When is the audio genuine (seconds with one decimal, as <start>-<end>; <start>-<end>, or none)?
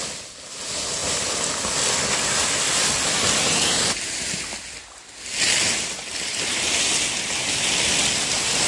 0.0-8.7